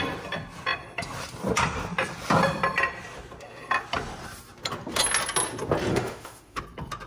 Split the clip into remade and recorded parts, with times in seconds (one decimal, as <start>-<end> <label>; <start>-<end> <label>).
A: 0.0-5.9 recorded; 5.9-6.6 remade; 6.6-7.1 recorded